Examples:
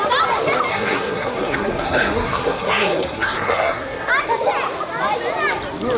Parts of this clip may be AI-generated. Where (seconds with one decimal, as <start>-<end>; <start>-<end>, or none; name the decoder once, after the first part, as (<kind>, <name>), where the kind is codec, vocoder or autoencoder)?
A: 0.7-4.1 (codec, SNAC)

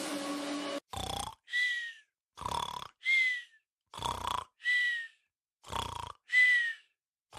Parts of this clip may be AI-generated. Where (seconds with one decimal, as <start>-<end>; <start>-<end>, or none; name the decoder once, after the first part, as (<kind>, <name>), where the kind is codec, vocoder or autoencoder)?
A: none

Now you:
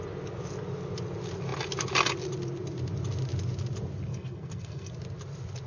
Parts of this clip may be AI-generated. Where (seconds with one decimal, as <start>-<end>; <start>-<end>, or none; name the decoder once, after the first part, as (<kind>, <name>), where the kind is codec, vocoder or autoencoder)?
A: 4.1-4.9 (codec, SNAC)

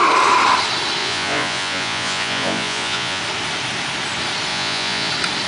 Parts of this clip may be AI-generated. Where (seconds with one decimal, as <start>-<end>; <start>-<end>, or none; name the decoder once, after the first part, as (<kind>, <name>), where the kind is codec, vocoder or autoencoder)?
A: 1.0-3.2 (vocoder, Vocos); 4.5-5.1